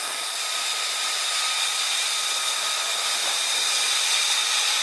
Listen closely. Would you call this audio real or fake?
real